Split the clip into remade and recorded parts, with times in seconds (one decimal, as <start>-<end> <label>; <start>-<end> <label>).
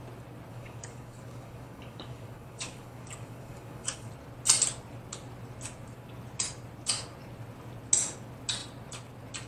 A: 0.0-0.5 recorded; 0.5-4.1 remade; 4.1-9.5 recorded